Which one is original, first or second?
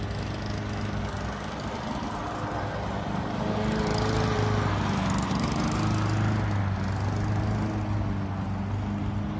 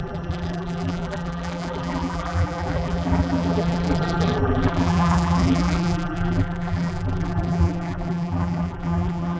first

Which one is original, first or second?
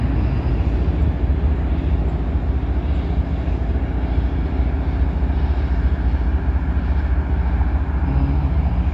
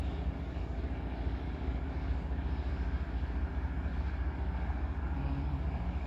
first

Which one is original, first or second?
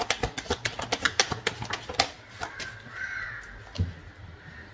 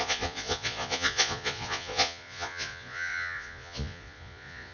first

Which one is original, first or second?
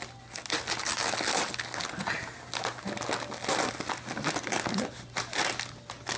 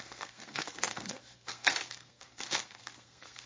first